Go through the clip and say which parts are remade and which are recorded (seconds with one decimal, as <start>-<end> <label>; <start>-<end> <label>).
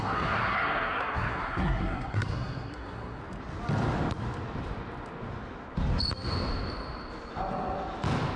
0.0-3.2 remade; 3.2-8.4 recorded